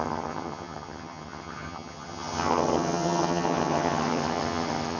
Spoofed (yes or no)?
yes